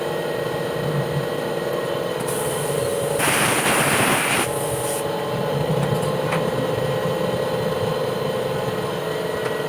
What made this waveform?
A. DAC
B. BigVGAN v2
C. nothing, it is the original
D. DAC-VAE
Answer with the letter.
C